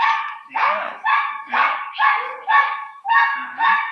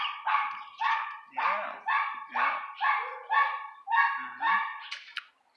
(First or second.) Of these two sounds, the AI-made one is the first